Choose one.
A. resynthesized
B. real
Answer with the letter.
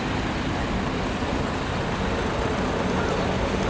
B